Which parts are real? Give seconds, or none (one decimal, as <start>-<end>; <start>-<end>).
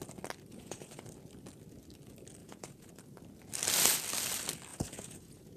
0.0-0.5; 1.0-2.4; 2.9-4.7